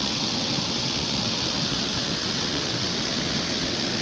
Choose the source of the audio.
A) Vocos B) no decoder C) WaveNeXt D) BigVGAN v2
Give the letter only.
C